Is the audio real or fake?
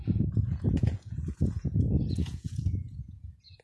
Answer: fake